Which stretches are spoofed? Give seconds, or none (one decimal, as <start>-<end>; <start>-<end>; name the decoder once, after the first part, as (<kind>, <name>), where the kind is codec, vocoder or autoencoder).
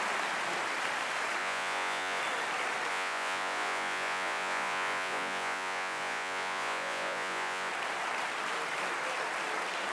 1.4-2.2 (vocoder, Vocos); 2.9-7.7